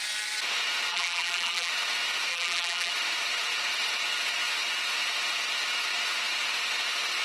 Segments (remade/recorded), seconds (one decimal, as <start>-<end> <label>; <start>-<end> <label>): 0.0-0.9 recorded; 0.9-1.7 remade; 1.7-2.3 recorded; 2.3-2.9 remade; 2.9-7.2 recorded

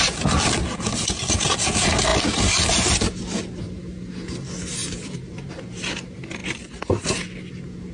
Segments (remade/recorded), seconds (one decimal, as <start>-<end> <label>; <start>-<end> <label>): 0.0-4.8 recorded; 4.8-5.6 remade; 5.6-7.9 recorded

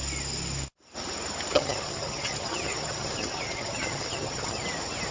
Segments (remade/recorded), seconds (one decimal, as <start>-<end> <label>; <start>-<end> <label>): 0.0-1.5 recorded; 1.5-4.6 remade; 4.6-5.1 recorded

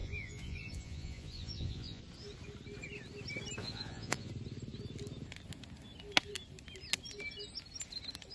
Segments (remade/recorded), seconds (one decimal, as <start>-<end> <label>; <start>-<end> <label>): 0.0-2.0 remade; 2.0-3.6 recorded; 3.6-4.3 remade; 4.3-8.3 recorded

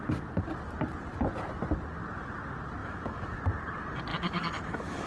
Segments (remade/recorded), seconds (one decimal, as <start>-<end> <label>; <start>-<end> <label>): 0.0-2.8 recorded; 2.8-3.4 remade; 3.4-4.1 recorded; 4.1-5.1 remade